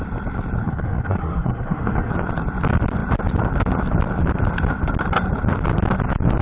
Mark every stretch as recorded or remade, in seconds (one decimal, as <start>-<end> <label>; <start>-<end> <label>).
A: 0.0-0.6 recorded; 0.6-2.1 remade; 2.1-6.4 recorded